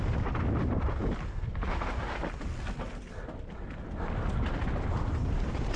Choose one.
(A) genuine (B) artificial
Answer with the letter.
A